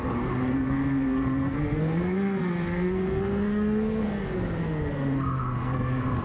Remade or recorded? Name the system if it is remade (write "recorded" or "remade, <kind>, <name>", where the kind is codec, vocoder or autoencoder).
remade, codec, SNAC